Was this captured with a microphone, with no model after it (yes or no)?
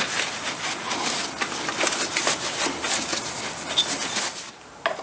yes